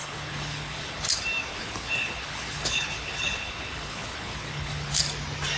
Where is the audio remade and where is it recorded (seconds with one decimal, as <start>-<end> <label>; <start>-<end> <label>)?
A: 0.0-1.0 remade; 1.0-1.5 recorded; 1.5-4.9 remade; 4.9-5.6 recorded